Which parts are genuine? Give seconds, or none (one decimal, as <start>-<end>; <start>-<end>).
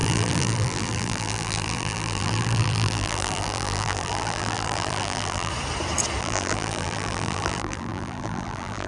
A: 5.5-6.2